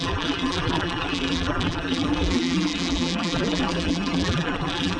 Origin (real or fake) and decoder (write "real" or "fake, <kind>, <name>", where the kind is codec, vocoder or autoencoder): fake, vocoder, BigVGAN v2